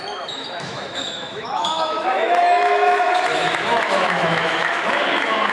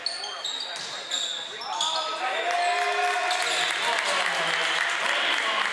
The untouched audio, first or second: second